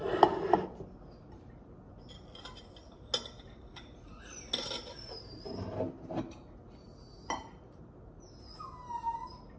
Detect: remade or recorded recorded